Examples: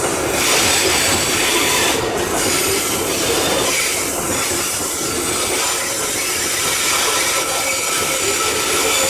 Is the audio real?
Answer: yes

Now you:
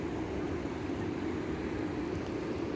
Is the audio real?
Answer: yes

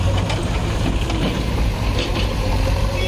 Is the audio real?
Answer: no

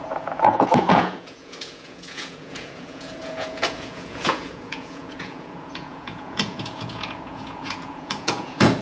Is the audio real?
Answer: no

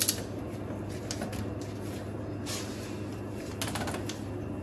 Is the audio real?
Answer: yes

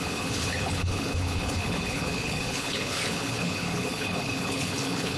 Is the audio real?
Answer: no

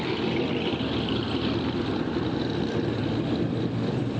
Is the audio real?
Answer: no